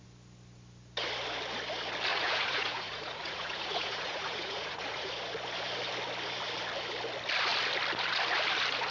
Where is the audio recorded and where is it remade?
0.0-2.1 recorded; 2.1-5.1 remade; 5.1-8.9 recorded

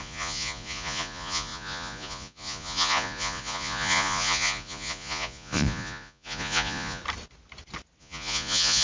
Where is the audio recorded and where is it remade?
0.0-7.0 remade; 7.0-8.0 recorded; 8.0-8.8 remade

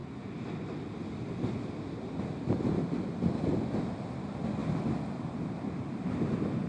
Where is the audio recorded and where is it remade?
0.0-6.7 recorded

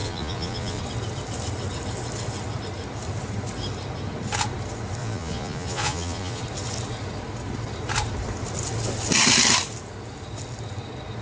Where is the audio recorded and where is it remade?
0.0-0.8 remade; 0.8-5.0 recorded; 5.0-6.4 remade; 6.4-11.2 recorded

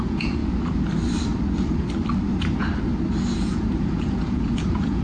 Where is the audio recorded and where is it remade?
0.0-0.4 remade; 0.4-3.4 recorded; 3.4-5.0 remade

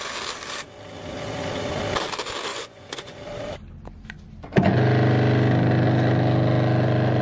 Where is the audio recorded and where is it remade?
0.0-2.5 recorded; 2.5-3.2 remade; 3.2-7.2 recorded